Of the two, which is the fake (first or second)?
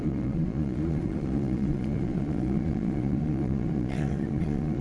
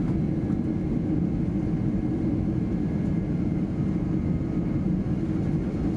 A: first